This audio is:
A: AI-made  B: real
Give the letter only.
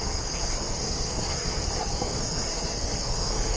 A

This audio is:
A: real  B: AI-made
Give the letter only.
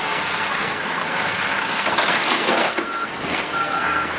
B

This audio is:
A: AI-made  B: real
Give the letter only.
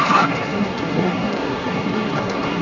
A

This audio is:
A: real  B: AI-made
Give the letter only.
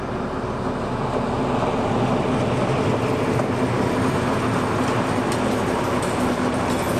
A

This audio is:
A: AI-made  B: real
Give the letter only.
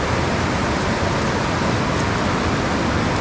B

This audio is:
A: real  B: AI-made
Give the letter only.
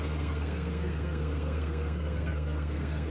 B